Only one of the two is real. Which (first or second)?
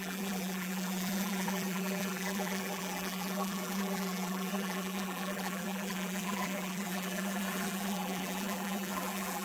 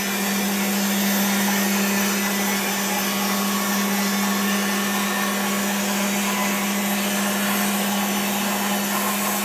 second